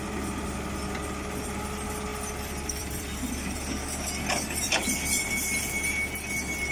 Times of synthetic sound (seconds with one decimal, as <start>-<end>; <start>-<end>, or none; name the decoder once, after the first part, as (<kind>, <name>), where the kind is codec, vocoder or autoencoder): 2.1-5.3 (vocoder, BigVGAN v2)